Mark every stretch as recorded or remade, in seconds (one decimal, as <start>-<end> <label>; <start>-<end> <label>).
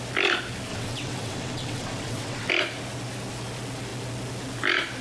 0.0-0.7 recorded; 0.7-2.5 remade; 2.5-5.0 recorded